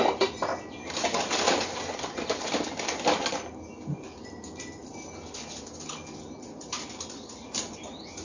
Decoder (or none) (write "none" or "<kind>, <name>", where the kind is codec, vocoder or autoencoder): none